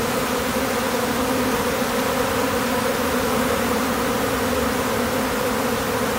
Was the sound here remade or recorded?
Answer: recorded